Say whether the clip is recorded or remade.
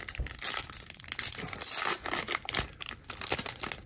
recorded